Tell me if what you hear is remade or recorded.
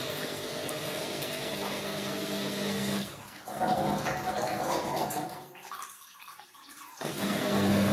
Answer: remade